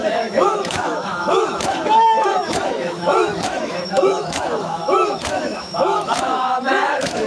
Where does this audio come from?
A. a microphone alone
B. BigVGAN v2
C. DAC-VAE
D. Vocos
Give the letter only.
C